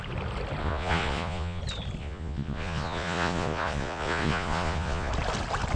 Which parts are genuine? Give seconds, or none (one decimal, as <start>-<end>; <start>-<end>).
0.0-0.6; 1.6-2.0; 5.1-5.8